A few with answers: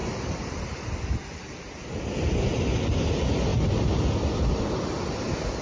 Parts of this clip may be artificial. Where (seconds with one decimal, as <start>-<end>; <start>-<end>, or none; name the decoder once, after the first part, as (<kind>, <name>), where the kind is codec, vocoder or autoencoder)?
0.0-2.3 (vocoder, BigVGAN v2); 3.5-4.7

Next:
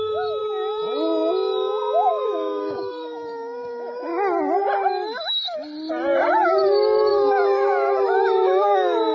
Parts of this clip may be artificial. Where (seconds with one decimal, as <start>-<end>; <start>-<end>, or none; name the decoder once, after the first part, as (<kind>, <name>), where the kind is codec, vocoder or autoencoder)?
0.0-0.4 (autoencoder, DAC-VAE); 2.1-4.1; 7.1-9.1

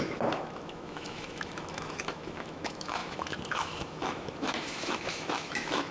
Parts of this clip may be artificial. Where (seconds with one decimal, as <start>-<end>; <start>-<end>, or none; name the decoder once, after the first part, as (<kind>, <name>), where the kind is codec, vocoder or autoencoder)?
0.0-5.9 (autoencoder, DAC-VAE)

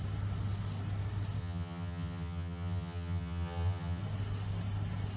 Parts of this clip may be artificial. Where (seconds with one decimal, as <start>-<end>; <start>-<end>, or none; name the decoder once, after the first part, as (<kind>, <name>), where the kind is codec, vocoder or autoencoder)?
1.4-4.0 (vocoder, HiFi-GAN)

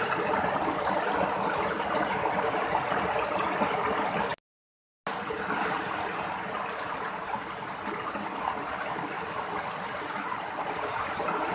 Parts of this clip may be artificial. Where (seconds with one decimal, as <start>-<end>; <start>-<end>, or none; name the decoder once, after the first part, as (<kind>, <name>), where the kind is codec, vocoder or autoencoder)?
none

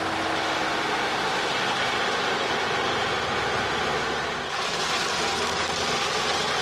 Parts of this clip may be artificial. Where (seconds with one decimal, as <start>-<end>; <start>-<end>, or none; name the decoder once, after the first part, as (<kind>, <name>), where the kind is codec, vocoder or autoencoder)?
none

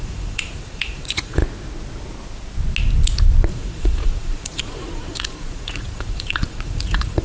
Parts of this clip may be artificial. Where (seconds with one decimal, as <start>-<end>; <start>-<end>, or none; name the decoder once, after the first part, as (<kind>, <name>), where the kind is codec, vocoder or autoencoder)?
0.0-1.4 (vocoder, Vocos); 3.5-7.2

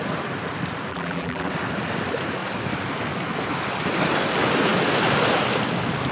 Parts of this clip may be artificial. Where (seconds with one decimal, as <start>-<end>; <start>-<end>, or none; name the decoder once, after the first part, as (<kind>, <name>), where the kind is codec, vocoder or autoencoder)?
0.9-1.5 (vocoder, BigVGAN v2)